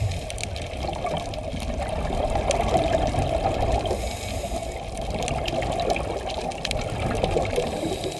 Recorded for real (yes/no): yes